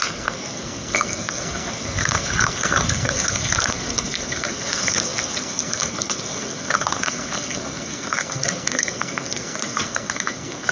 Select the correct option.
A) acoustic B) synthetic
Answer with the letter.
B